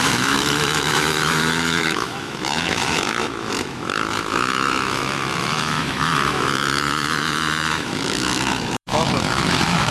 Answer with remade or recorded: remade